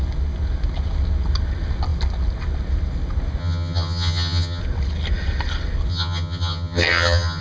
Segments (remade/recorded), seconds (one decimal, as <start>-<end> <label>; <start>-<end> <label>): 0.0-3.4 recorded; 3.4-4.6 remade; 4.6-5.9 recorded; 5.9-7.4 remade